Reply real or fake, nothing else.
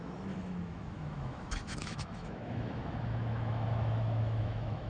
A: fake